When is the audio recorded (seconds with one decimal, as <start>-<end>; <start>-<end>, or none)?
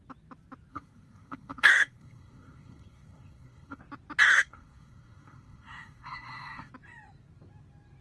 0.0-0.7; 3.8-4.3; 6.7-8.0